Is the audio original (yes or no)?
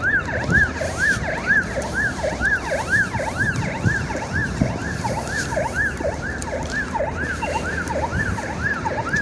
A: no